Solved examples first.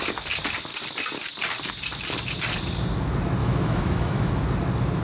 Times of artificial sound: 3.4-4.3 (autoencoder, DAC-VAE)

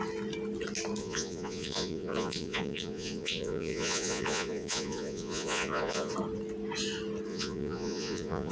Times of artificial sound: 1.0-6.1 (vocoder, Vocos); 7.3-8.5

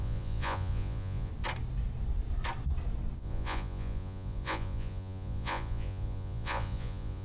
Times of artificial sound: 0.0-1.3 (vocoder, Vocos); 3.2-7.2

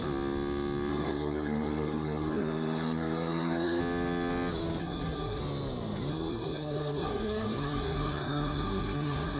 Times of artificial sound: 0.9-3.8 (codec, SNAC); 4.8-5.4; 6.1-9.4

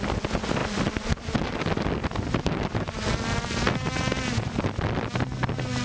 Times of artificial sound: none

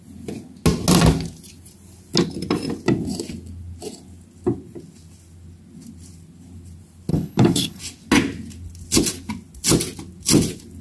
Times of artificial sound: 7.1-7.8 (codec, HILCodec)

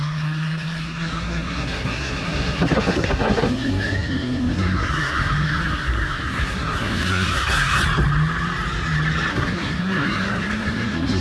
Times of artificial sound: 0.0-7.8 (codec, SNAC); 9.3-11.2